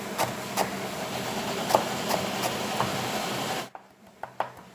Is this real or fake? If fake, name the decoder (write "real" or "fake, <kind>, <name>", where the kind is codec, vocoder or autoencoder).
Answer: real